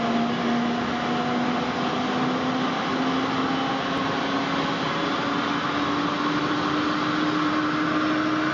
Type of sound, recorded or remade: recorded